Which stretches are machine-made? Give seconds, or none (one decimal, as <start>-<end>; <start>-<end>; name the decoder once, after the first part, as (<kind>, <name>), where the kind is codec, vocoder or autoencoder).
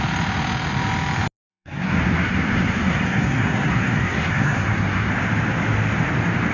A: 1.5-5.1 (codec, SNAC)